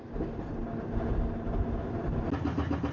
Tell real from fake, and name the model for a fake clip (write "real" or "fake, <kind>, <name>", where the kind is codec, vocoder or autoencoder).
real